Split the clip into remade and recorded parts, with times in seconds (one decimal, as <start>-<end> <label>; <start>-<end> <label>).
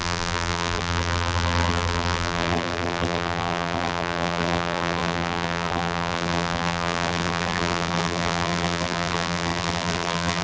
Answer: 0.0-10.4 remade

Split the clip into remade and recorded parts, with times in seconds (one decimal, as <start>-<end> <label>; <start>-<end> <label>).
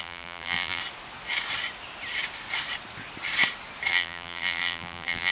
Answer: 0.0-0.8 remade; 0.8-3.9 recorded; 3.9-5.3 remade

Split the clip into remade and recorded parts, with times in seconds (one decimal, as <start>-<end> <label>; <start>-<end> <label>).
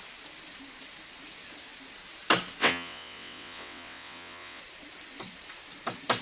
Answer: 0.0-2.6 recorded; 2.6-4.6 remade; 4.6-6.2 recorded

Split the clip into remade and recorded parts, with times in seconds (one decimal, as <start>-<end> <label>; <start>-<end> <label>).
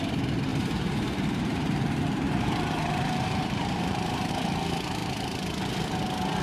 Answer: 0.0-0.5 recorded; 0.5-4.3 remade; 4.3-6.4 recorded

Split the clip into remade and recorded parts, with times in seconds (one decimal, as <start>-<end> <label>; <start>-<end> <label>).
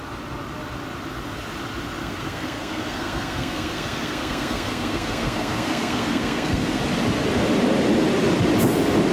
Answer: 0.0-2.0 recorded; 2.0-6.8 remade; 6.8-9.1 recorded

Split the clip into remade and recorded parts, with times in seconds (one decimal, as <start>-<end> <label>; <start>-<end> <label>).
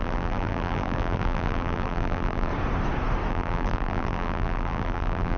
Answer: 0.0-2.5 remade; 2.5-3.3 recorded; 3.3-5.4 remade